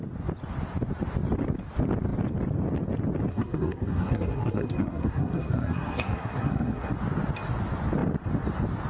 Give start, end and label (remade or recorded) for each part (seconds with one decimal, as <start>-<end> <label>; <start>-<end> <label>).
0.0-3.3 recorded; 3.3-6.9 remade; 6.9-8.9 recorded